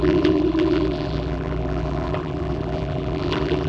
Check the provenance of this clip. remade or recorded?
remade